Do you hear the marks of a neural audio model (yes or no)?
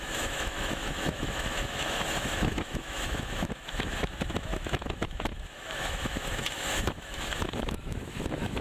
yes